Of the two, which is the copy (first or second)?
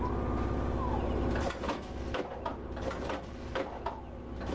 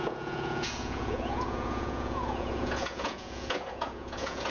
second